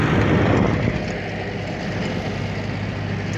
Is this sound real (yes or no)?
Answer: yes